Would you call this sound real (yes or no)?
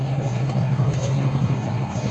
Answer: no